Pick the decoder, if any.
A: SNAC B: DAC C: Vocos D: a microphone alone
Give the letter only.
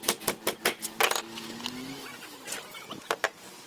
D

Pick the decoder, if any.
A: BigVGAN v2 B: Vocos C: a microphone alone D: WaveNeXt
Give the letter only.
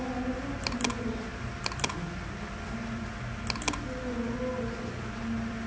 C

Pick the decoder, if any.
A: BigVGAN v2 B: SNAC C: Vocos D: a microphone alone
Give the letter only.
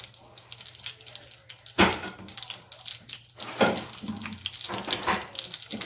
D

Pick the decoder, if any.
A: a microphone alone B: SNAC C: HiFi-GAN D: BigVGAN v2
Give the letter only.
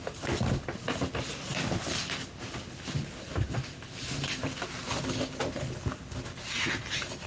A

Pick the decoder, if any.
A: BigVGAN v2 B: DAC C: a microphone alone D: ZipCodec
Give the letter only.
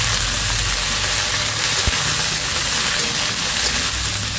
C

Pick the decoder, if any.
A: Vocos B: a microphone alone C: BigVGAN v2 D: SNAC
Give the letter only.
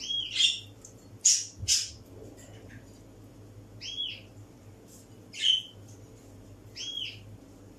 B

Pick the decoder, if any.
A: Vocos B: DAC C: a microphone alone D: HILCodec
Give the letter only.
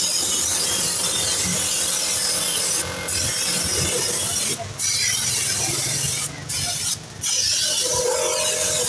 C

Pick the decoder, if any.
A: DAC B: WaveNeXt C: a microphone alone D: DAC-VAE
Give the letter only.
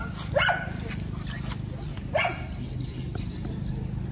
C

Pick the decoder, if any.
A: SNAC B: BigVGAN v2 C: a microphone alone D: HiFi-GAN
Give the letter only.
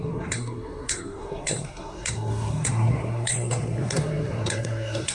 A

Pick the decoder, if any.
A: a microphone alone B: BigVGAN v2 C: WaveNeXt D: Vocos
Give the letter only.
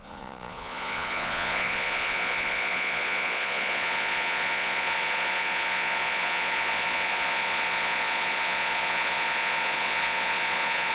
D